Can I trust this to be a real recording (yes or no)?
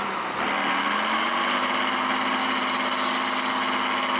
yes